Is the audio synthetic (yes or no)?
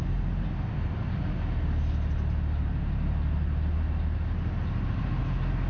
no